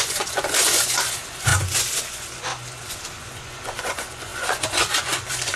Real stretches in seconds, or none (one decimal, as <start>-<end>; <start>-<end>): none